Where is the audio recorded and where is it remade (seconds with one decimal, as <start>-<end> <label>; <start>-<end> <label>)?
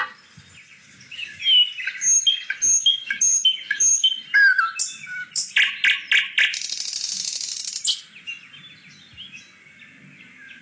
0.0-0.8 recorded; 0.8-1.4 remade; 1.4-2.9 recorded; 2.9-3.8 remade; 3.8-10.6 recorded